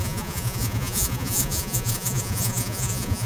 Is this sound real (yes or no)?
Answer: no